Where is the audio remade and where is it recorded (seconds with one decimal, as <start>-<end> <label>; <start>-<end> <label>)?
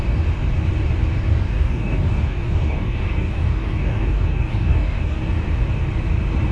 0.0-1.3 recorded; 1.3-5.2 remade; 5.2-6.5 recorded